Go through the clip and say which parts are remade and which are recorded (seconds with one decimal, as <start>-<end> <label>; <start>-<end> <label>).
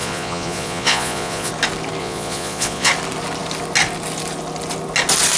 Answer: 0.0-1.5 remade; 1.5-2.0 recorded; 2.0-2.9 remade; 2.9-5.4 recorded